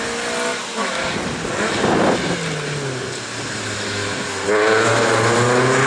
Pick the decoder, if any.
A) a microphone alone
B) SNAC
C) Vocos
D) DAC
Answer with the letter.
A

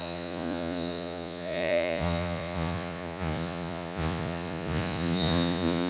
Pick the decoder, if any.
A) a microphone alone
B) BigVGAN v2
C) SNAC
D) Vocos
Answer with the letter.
D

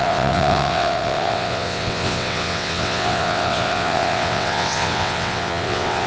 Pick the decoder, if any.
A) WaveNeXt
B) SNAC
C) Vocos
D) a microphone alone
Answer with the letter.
A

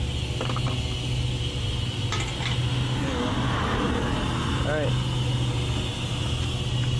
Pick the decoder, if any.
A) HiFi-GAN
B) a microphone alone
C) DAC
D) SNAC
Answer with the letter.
B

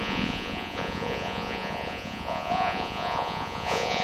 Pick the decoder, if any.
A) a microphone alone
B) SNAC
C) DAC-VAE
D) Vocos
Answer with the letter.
D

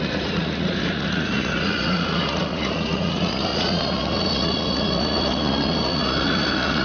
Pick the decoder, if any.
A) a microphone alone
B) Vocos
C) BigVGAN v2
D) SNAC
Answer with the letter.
B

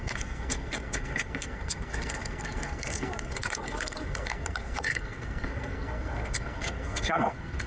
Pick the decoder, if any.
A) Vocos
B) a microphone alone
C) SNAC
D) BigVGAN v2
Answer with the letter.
C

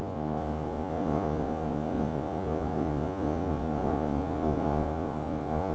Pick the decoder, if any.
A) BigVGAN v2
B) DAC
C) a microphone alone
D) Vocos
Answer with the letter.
D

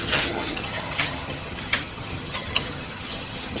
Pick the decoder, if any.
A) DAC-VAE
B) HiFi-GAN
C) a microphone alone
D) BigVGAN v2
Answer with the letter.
B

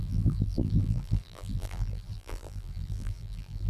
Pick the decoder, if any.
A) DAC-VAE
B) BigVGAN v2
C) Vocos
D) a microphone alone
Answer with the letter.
B